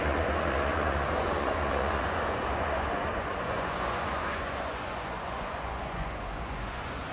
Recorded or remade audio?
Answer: remade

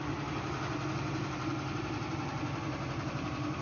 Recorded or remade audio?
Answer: recorded